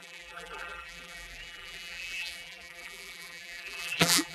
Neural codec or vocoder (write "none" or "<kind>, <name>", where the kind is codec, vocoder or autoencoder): vocoder, BigVGAN v2